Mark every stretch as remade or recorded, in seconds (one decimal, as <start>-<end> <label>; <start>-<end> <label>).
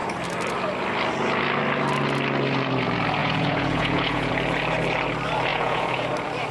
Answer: 0.0-3.2 recorded; 3.2-4.3 remade; 4.3-5.5 recorded; 5.5-6.1 remade; 6.1-6.5 recorded